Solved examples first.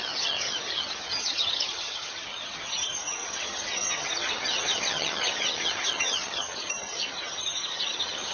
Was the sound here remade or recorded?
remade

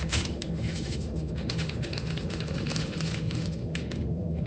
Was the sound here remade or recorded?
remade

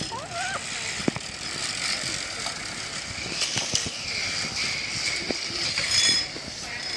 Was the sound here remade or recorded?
recorded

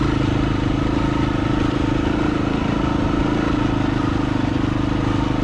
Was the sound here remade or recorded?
recorded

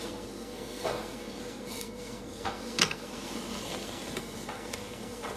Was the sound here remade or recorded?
remade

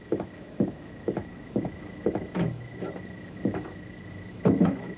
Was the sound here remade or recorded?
remade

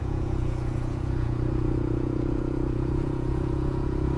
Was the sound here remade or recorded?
remade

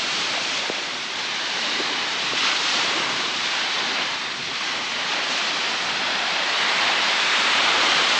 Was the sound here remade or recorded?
remade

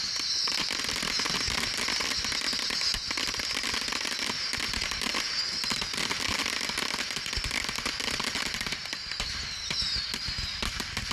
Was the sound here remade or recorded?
recorded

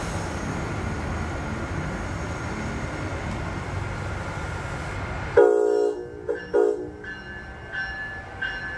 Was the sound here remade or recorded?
recorded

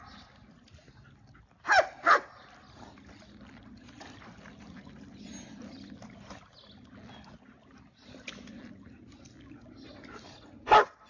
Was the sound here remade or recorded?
recorded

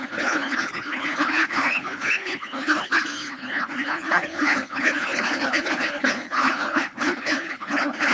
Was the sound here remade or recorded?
remade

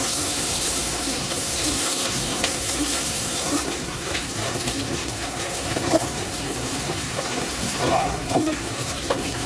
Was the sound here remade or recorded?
remade